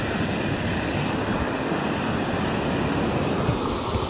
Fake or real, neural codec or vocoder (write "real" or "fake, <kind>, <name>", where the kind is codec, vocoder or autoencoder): real